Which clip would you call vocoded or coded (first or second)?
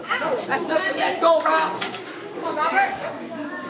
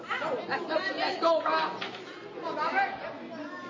first